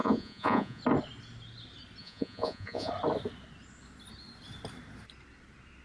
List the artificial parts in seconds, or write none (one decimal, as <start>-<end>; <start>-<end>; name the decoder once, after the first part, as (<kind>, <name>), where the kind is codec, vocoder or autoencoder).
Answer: 0.0-0.8 (vocoder, Vocos); 2.0-2.9